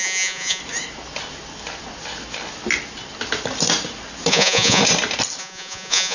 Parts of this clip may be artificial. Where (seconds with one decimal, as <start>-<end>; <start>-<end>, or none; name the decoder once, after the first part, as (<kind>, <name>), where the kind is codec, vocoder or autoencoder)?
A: 0.0-0.6 (vocoder, Vocos); 4.3-4.8; 5.4-6.1